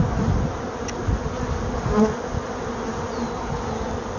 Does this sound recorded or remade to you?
recorded